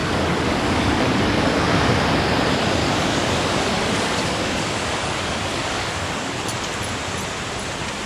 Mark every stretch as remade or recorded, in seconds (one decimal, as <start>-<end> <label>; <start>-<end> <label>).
0.0-1.9 remade; 1.9-2.8 recorded; 2.8-6.4 remade; 6.4-8.1 recorded